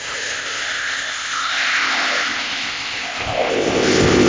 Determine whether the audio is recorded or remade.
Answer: remade